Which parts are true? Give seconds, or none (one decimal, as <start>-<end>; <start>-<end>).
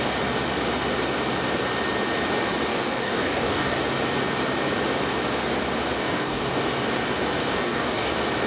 0.0-2.7; 3.8-6.0; 6.7-7.4; 8.1-8.5